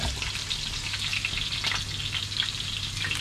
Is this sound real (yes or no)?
yes